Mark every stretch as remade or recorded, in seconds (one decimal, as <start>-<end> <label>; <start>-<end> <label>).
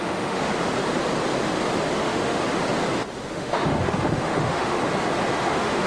0.0-0.5 remade; 0.5-2.0 recorded; 2.0-2.5 remade; 2.5-3.3 recorded; 3.3-4.8 remade; 4.8-5.5 recorded; 5.5-5.9 remade